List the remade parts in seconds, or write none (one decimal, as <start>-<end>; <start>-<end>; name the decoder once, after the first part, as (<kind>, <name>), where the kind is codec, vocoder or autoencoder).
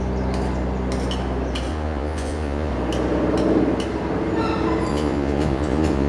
1.7-2.7 (vocoder, Vocos); 4.9-6.1